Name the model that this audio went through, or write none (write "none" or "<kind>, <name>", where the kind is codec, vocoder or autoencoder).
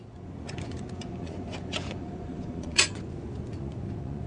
vocoder, Vocos